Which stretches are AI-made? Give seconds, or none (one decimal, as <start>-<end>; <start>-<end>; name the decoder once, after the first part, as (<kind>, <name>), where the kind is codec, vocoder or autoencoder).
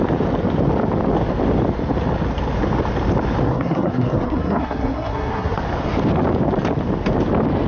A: 3.4-5.6 (codec, SNAC)